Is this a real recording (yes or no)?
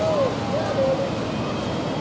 yes